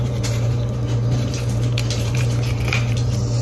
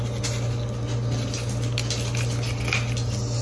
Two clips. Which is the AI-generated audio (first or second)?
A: first